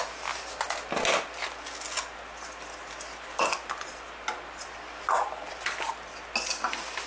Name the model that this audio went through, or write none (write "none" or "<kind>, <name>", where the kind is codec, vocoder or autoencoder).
none